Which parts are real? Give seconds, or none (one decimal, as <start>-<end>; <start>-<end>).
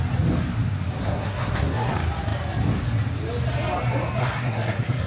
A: 0.0-1.0; 1.9-4.2